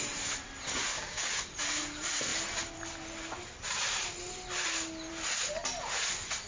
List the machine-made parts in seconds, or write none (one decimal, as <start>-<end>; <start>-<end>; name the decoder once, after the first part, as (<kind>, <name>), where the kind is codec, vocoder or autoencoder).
0.9-1.4 (codec, DAC)